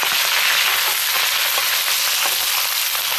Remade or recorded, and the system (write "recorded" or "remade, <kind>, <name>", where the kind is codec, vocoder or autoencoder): recorded